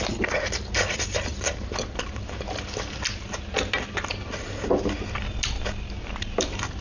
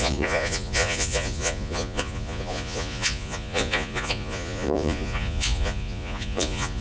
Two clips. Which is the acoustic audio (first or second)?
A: first